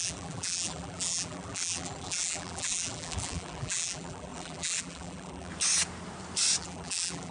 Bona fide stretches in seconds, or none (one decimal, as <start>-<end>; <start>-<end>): 5.5-6.6